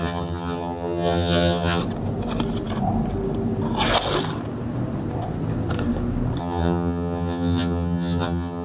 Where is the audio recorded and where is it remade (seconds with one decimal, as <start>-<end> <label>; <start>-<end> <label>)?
0.0-1.8 remade; 1.8-6.4 recorded; 6.4-8.6 remade